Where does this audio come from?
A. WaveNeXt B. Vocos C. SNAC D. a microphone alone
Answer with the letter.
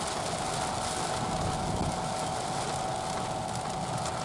D